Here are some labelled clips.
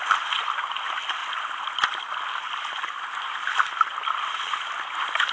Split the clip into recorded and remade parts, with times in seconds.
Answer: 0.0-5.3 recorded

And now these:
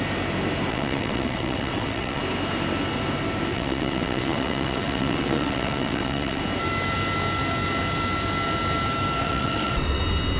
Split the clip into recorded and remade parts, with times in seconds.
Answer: 0.0-0.7 recorded; 0.7-2.2 remade; 2.2-3.5 recorded; 3.5-6.4 remade; 6.4-9.2 recorded; 9.2-10.0 remade; 10.0-10.4 recorded

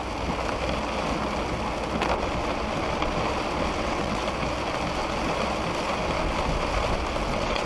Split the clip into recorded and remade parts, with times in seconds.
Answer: 0.0-3.8 recorded; 3.8-4.2 remade; 4.2-7.3 recorded; 7.3-7.7 remade

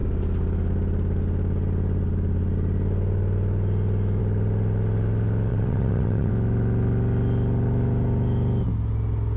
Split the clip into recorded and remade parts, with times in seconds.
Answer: 0.0-5.5 recorded; 5.5-6.3 remade; 6.3-9.4 recorded

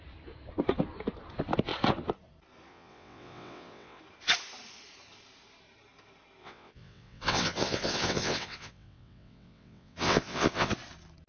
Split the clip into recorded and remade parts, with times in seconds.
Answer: 0.0-2.7 recorded; 2.7-4.0 remade; 4.0-6.4 recorded; 6.4-10.7 remade; 10.7-11.3 recorded

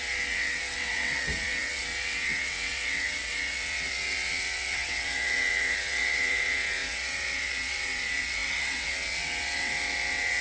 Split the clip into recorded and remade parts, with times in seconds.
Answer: 0.0-10.4 remade

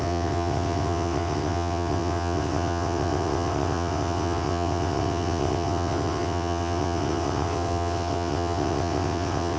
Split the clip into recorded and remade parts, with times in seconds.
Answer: 0.0-9.6 remade

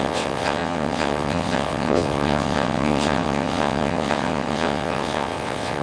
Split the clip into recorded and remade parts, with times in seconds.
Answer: 0.0-5.8 remade